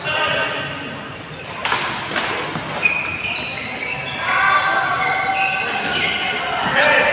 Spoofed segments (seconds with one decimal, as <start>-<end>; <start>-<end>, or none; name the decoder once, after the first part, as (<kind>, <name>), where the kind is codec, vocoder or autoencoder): none